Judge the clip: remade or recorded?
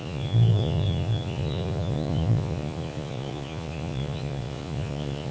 remade